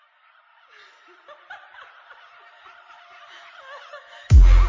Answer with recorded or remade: recorded